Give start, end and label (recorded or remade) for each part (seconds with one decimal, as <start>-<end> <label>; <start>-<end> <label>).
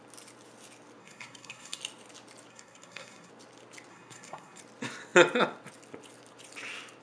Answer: 0.0-1.0 recorded; 1.0-1.8 remade; 1.8-2.5 recorded; 2.5-3.3 remade; 3.3-3.9 recorded; 3.9-4.6 remade; 4.6-7.0 recorded